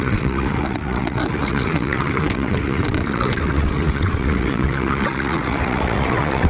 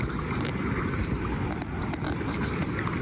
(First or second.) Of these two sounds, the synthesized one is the first